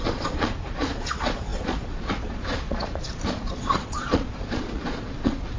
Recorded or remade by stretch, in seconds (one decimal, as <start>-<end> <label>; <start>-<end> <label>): 0.0-5.6 remade